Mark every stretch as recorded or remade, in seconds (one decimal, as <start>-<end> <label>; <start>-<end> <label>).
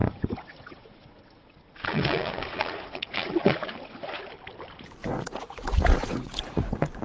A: 0.0-4.2 remade; 4.2-5.0 recorded; 5.0-7.0 remade